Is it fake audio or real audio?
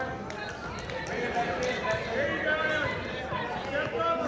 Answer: real